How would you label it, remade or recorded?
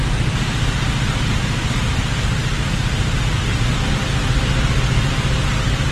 recorded